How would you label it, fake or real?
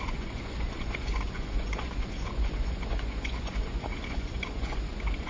fake